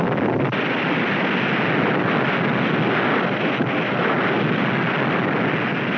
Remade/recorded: recorded